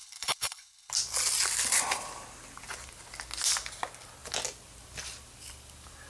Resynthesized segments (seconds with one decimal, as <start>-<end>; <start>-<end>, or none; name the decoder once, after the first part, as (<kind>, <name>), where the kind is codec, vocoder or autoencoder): 0.0-0.9 (codec, HILCodec)